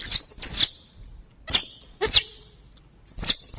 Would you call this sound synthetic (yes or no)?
no